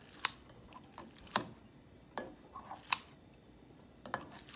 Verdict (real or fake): real